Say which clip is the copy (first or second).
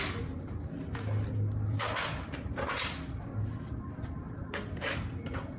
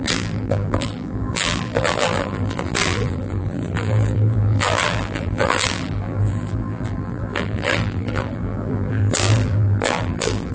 second